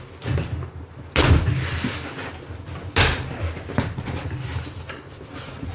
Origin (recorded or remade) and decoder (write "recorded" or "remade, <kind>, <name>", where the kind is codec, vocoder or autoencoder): recorded